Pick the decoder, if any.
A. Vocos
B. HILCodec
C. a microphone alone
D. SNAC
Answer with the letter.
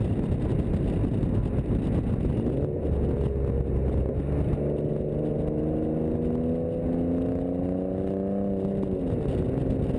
C